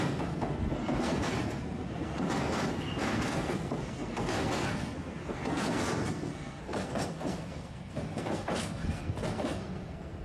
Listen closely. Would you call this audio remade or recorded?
remade